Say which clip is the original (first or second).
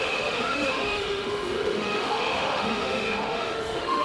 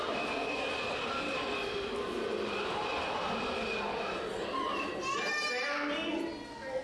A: second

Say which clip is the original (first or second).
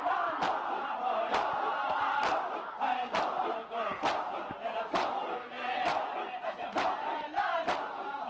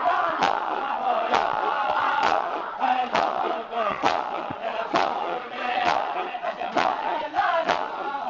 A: first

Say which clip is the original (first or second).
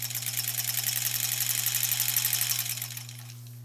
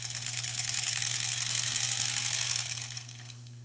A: first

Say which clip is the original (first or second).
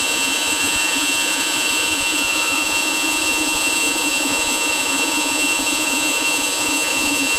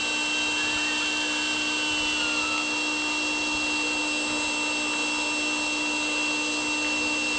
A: second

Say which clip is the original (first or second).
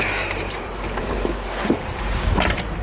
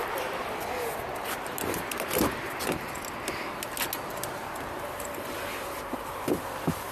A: second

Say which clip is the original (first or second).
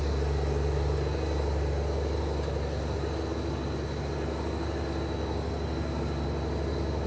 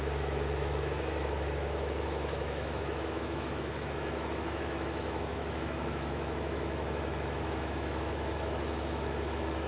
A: first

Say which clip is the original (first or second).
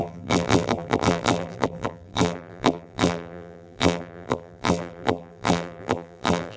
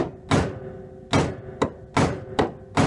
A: second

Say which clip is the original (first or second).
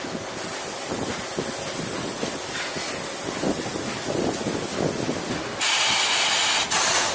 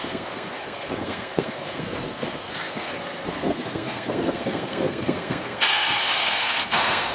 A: first